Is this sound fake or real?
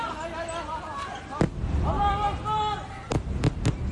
real